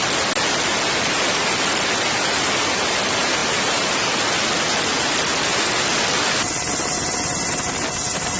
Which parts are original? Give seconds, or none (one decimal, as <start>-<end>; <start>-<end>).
0.0-8.4